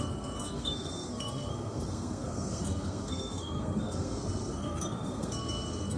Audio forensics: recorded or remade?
remade